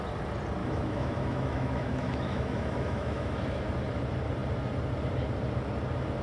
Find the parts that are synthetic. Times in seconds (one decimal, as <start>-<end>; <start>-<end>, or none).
0.6-3.4

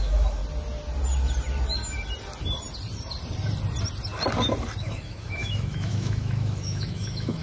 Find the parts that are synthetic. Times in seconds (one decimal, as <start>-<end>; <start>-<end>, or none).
0.0-0.4; 4.8-7.4

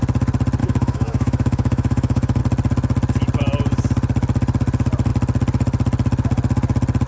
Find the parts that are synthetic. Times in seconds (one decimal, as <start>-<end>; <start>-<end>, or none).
0.6-2.4

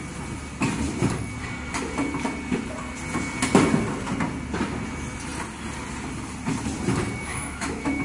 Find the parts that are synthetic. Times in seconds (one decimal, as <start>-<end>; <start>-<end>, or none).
7.3-8.0

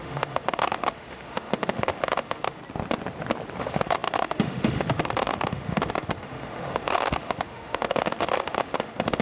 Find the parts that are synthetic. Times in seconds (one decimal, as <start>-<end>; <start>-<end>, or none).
0.0-2.6; 3.6-9.2

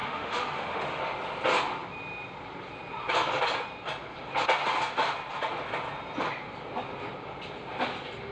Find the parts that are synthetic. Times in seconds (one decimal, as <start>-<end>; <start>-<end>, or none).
0.0-1.0